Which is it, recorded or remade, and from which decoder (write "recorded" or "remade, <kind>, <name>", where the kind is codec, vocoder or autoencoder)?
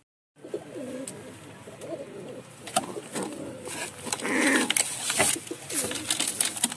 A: recorded